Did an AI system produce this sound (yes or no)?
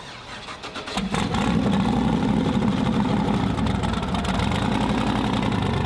no